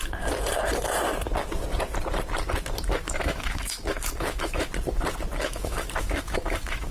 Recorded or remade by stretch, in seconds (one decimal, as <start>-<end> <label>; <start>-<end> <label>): 0.0-2.9 recorded; 2.9-4.7 remade; 4.7-5.4 recorded; 5.4-6.9 remade